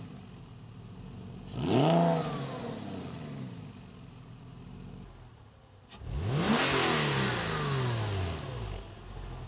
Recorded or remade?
recorded